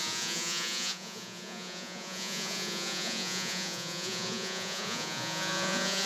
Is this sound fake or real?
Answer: fake